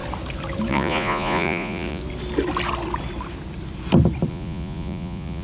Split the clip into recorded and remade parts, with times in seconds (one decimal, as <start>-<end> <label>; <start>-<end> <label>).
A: 0.0-0.7 recorded; 0.7-2.0 remade; 2.0-4.3 recorded; 4.3-5.4 remade